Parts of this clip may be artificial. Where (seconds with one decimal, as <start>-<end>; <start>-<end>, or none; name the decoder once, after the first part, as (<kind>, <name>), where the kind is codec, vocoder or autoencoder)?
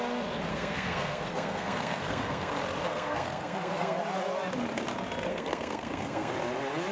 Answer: 0.5-2.5 (codec, SNAC); 2.9-4.0; 5.3-6.3